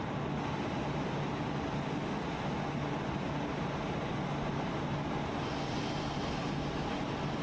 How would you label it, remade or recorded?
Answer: recorded